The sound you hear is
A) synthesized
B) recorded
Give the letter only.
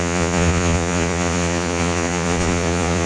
A